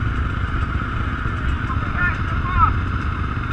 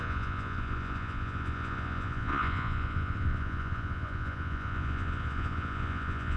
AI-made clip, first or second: second